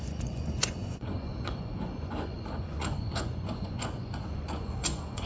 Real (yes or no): no